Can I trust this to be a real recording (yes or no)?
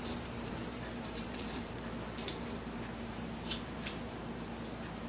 no